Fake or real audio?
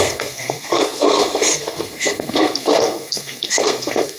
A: fake